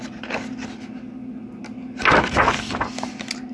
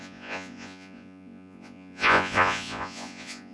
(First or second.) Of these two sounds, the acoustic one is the first